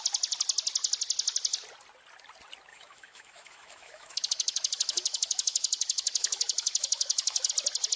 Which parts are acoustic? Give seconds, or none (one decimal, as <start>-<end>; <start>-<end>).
0.0-2.7; 7.5-8.0